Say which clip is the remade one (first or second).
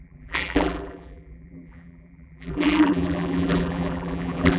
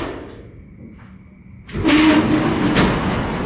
first